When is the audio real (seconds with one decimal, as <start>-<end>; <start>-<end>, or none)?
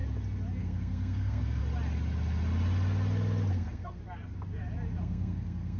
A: 0.0-0.6; 1.6-3.5; 4.0-5.0